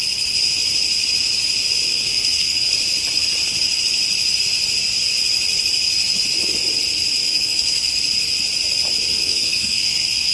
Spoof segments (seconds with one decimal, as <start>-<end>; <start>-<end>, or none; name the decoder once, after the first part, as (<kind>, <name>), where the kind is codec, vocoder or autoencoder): 1.9-2.7 (codec, SNAC); 7.2-7.9; 9.1-10.3